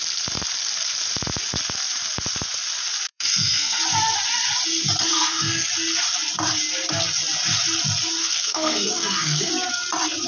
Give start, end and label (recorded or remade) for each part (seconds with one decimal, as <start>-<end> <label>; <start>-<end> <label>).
0.0-3.1 recorded; 3.1-3.8 remade; 3.8-5.1 recorded; 5.1-5.7 remade; 5.7-8.2 recorded; 8.2-9.5 remade; 9.5-10.3 recorded